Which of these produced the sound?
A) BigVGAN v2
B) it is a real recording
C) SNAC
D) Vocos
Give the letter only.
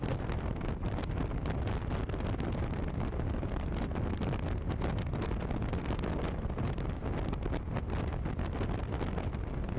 B